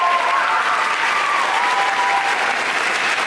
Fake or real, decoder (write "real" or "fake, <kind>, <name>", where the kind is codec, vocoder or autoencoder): real